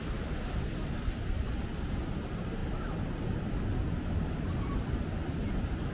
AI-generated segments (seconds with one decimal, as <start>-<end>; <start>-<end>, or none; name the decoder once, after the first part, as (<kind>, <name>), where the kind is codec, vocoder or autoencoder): 2.6-5.5 (vocoder, BigVGAN v2)